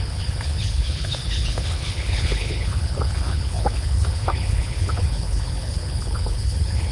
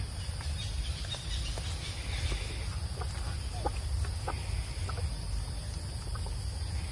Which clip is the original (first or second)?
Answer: second